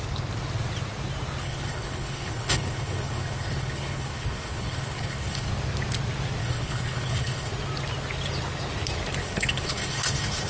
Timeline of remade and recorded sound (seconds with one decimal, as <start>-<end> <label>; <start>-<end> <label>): 0.0-1.4 recorded; 1.4-5.5 remade; 5.5-6.4 recorded; 6.4-7.5 remade; 7.5-9.2 recorded; 9.2-10.5 remade